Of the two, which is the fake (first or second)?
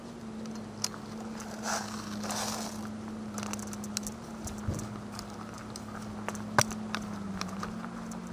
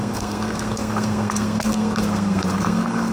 second